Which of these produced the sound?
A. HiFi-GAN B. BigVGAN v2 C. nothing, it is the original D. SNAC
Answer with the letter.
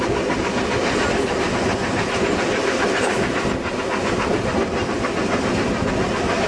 C